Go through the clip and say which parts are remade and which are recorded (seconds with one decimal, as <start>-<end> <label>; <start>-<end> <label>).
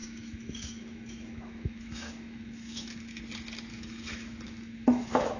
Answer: 0.0-3.2 remade; 3.2-3.7 recorded; 3.7-5.4 remade